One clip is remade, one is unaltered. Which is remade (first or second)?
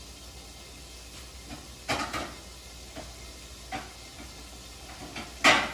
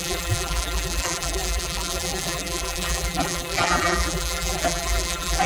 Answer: second